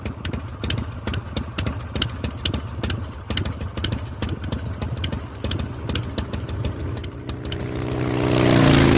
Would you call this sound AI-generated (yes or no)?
no